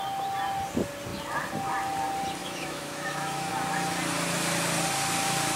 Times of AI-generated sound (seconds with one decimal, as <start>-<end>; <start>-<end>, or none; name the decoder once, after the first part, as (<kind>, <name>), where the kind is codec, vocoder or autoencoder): 2.4-3.5 (autoencoder, DAC-VAE)